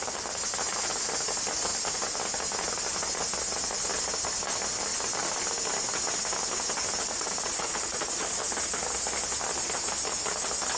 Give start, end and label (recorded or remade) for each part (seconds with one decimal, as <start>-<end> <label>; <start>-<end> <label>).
0.0-7.0 recorded; 7.0-8.4 remade; 8.4-10.8 recorded